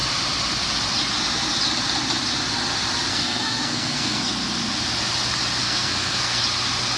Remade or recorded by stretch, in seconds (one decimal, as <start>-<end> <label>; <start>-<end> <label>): 0.0-3.1 recorded; 3.1-4.3 remade; 4.3-5.6 recorded; 5.6-6.4 remade; 6.4-7.0 recorded